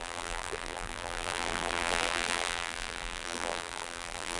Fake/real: fake